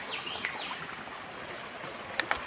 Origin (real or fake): real